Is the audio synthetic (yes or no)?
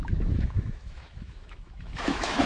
yes